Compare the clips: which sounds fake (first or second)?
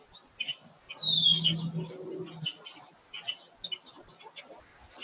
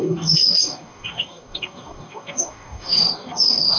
second